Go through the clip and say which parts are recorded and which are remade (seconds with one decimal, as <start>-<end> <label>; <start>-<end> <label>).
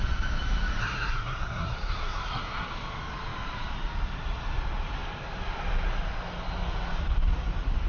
0.0-0.8 recorded; 0.8-2.7 remade; 2.7-7.9 recorded